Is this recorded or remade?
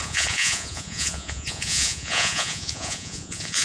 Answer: remade